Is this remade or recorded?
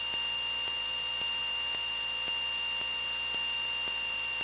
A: recorded